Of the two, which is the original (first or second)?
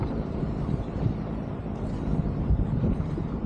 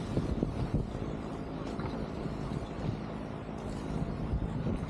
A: second